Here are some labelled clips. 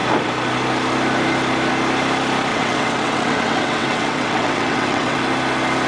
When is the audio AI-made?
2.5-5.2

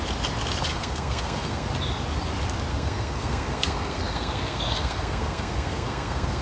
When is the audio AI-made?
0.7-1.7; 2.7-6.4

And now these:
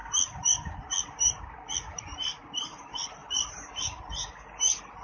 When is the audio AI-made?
none

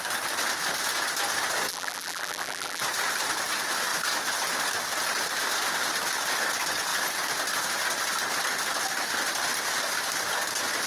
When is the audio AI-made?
1.7-2.8

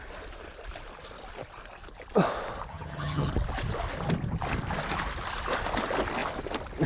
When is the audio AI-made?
2.7-3.3

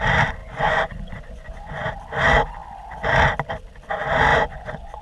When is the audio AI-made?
0.4-1.9; 4.3-5.0